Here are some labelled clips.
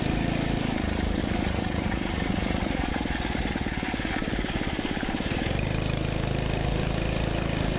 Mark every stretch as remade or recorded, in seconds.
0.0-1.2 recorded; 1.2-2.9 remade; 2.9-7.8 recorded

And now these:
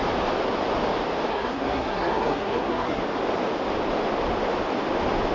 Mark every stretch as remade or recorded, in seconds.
0.0-1.3 recorded; 1.3-3.0 remade; 3.0-5.3 recorded

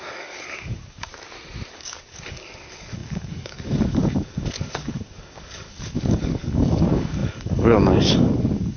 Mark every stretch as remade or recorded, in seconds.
0.0-1.1 remade; 1.1-1.7 recorded; 1.7-8.8 remade

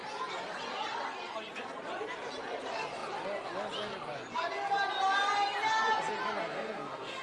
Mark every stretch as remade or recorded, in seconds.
0.0-6.4 recorded; 6.4-7.2 remade